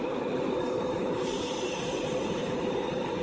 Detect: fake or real fake